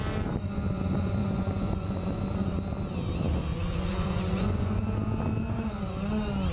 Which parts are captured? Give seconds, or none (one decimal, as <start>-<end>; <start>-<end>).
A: 0.0-1.2; 2.2-3.5; 4.8-6.5